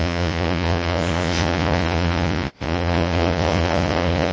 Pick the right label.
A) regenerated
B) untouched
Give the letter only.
A